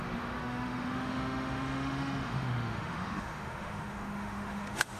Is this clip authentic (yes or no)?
no